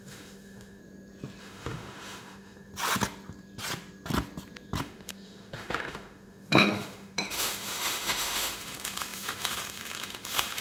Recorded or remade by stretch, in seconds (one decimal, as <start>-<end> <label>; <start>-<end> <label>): 0.0-0.8 remade; 0.8-1.4 recorded; 1.4-2.7 remade; 2.7-4.8 recorded; 4.8-10.6 remade